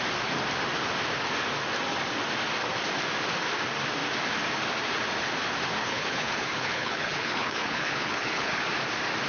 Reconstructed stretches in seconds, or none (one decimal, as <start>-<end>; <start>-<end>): 5.8-8.6